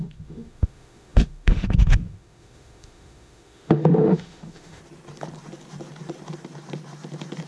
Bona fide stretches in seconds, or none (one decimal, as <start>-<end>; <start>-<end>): 4.8-7.5